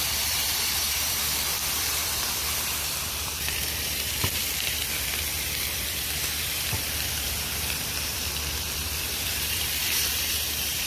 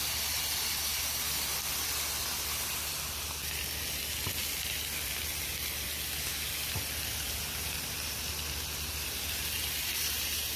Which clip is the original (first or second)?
second